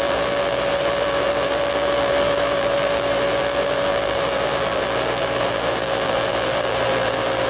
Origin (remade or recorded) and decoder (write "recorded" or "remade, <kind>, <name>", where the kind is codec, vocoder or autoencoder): remade, vocoder, BigVGAN v2